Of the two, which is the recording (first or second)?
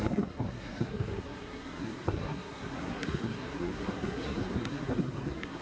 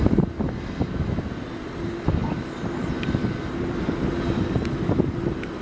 second